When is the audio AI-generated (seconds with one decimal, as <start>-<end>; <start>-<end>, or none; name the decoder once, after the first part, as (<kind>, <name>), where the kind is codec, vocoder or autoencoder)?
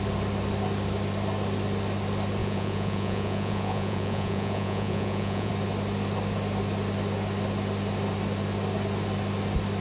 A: 2.4-5.5 (vocoder, Vocos)